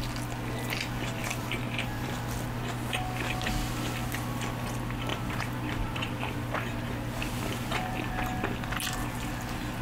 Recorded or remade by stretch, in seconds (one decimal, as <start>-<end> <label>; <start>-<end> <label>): 0.0-1.2 recorded; 1.2-2.2 remade; 2.2-5.1 recorded; 5.1-8.1 remade; 8.1-9.8 recorded